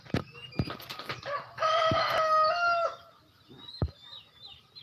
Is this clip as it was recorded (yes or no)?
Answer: yes